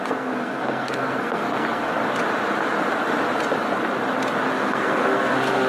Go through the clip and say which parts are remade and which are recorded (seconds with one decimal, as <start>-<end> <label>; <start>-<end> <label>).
0.0-2.0 remade; 2.0-4.5 recorded; 4.5-5.7 remade

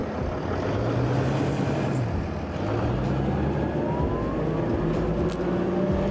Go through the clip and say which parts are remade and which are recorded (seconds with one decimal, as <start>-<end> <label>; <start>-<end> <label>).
0.0-6.1 recorded

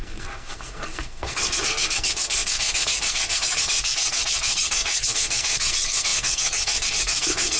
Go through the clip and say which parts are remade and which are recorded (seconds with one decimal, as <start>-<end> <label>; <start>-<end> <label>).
0.0-7.6 remade

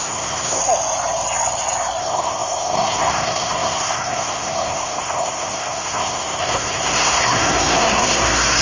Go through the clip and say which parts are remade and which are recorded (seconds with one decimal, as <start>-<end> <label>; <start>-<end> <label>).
0.0-0.6 remade; 0.6-2.0 recorded; 2.0-8.6 remade

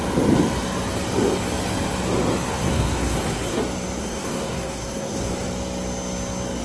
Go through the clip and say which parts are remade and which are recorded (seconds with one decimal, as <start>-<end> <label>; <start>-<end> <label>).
0.0-2.5 recorded; 2.5-3.6 remade; 3.6-4.0 recorded; 4.0-5.3 remade; 5.3-6.6 recorded

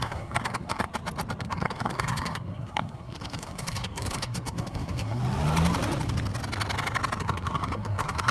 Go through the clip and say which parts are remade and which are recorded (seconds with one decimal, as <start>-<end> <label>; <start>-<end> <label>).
0.0-0.9 remade; 0.9-1.4 recorded; 1.4-5.2 remade; 5.2-7.2 recorded; 7.2-8.3 remade

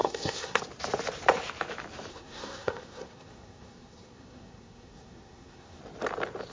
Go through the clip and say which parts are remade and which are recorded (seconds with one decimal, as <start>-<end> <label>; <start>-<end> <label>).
0.0-0.6 remade; 0.6-2.1 recorded; 2.1-5.8 remade; 5.8-6.5 recorded